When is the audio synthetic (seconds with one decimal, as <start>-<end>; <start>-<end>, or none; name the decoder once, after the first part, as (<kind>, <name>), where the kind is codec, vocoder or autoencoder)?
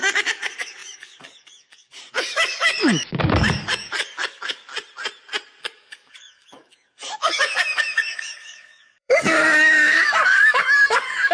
0.0-4.7 (codec, DAC); 5.6-11.3